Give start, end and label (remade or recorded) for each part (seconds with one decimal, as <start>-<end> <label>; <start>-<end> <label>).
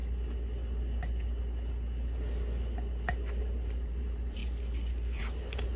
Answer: 0.0-3.4 recorded; 3.4-4.4 remade; 4.4-5.2 recorded; 5.2-5.8 remade